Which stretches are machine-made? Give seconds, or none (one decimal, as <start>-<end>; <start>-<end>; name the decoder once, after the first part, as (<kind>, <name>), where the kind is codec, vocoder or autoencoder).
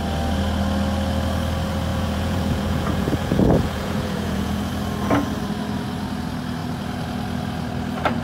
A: 1.9-4.7 (vocoder, Vocos)